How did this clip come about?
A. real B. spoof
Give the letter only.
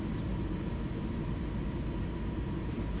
A